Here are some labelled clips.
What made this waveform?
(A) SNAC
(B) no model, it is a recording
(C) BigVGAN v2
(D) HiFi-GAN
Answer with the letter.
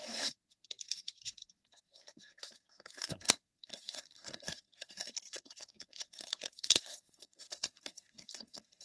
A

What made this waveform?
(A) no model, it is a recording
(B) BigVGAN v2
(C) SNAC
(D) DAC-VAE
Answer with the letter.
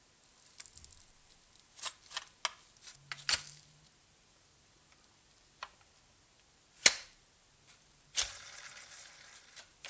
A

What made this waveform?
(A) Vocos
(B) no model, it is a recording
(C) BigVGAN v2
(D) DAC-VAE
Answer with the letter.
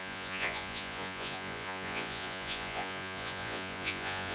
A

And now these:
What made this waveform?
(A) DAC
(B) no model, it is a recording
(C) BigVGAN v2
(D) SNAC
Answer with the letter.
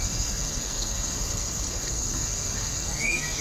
D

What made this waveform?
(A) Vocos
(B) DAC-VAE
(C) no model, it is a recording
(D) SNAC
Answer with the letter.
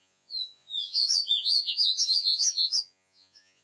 A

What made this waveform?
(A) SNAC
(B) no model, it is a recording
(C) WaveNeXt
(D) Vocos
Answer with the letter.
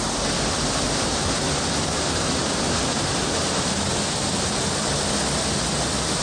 B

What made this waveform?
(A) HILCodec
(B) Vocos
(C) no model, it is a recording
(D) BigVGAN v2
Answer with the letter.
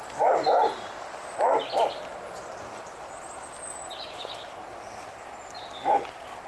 C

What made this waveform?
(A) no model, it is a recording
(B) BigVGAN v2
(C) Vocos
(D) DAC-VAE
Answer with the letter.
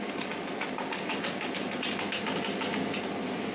A